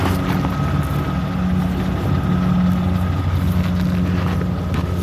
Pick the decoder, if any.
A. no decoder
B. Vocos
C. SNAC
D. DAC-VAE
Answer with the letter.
A